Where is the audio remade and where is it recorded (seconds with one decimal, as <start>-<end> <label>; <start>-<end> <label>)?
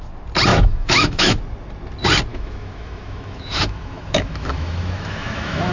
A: 0.0-0.5 recorded; 0.5-1.4 remade; 1.4-2.3 recorded; 2.3-5.7 remade